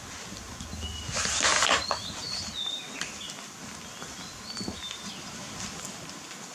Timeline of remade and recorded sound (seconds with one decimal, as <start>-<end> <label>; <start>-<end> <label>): 0.0-6.5 recorded